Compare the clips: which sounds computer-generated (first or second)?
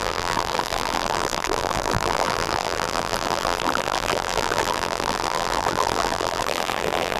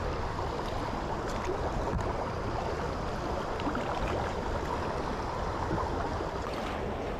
first